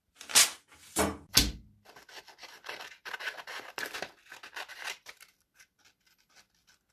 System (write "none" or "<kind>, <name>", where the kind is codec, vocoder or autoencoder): none